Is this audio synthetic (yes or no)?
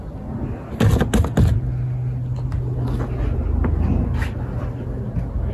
no